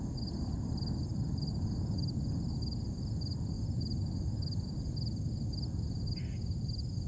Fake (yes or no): no